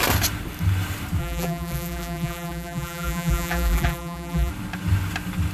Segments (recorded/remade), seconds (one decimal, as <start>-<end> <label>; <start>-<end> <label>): 0.0-1.2 recorded; 1.2-4.5 remade; 4.5-5.5 recorded